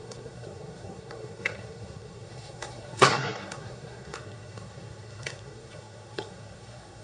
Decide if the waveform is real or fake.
fake